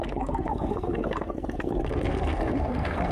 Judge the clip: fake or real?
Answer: fake